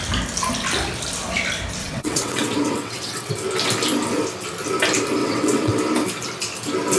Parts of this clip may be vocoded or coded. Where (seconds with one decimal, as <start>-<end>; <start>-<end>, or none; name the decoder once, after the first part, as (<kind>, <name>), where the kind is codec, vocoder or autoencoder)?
1.8-3.3 (vocoder, WaveNeXt); 5.2-5.7